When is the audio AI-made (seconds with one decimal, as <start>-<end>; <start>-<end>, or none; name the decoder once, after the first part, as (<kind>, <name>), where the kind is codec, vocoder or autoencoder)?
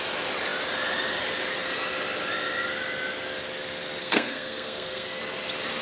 4.0-5.2 (codec, SNAC)